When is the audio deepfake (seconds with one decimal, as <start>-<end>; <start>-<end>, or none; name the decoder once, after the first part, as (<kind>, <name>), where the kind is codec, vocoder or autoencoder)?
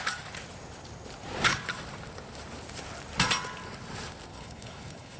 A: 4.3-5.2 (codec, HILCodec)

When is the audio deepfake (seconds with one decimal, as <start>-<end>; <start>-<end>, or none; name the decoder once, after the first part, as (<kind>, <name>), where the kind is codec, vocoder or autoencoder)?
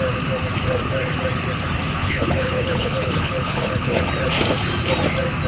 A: 2.0-4.0 (codec, HILCodec)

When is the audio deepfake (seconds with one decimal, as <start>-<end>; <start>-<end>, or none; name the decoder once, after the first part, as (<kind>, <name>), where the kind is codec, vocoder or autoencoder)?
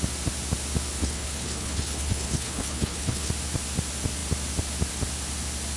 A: 1.0-3.3 (codec, HILCodec)